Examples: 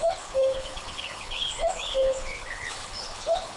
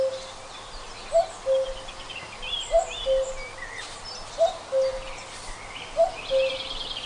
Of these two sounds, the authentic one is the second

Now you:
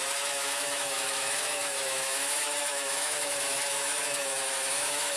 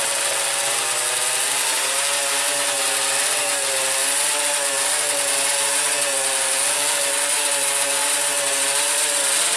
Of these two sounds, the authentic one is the second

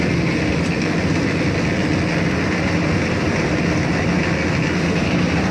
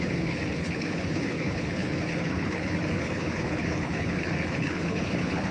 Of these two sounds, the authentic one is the first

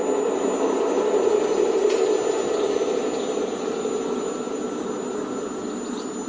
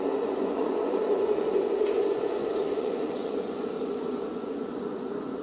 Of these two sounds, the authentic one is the first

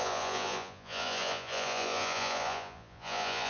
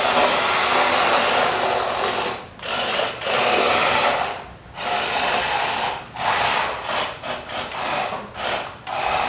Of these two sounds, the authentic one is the second